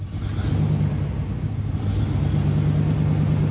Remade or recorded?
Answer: recorded